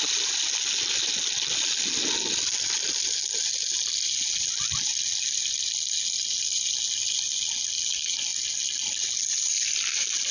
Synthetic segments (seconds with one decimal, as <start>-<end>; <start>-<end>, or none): none